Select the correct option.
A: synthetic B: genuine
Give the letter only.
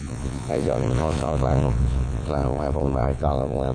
A